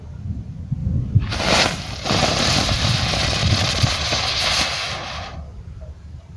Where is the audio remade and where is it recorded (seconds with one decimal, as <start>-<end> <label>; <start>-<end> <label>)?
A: 0.0-0.8 remade; 0.8-1.6 recorded; 1.6-3.4 remade; 3.4-5.2 recorded; 5.2-6.4 remade